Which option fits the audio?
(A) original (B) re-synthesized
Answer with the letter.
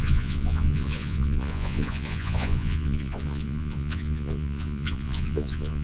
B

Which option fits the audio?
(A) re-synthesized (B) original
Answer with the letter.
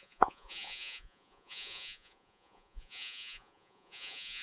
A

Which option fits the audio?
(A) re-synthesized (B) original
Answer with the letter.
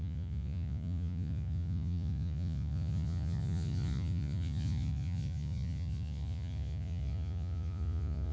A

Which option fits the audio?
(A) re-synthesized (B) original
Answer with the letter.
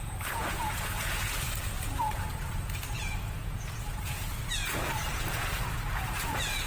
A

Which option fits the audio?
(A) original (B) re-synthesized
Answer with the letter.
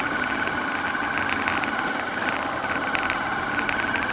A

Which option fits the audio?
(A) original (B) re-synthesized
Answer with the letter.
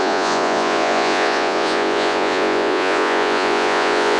B